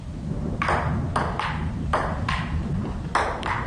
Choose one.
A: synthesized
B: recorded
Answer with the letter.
B